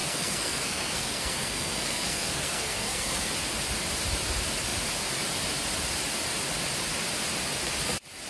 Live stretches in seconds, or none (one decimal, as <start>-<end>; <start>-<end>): 3.3-8.3